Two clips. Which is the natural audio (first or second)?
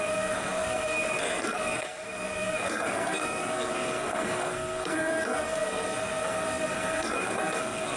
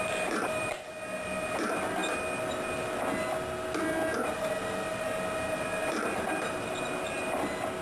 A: second